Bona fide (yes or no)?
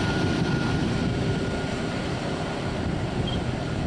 no